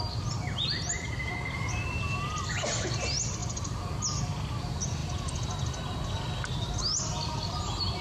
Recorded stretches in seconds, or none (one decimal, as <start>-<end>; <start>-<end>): 0.0-8.0